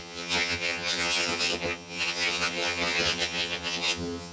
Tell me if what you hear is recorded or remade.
remade